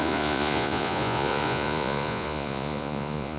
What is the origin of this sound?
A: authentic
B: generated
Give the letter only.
B